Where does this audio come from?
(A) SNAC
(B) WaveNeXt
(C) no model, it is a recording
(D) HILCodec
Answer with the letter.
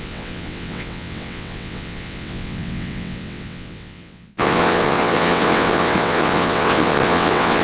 B